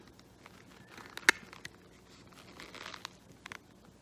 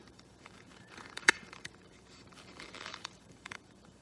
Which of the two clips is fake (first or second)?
second